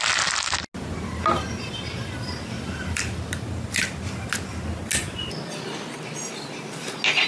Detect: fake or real real